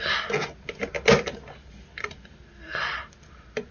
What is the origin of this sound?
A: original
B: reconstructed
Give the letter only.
A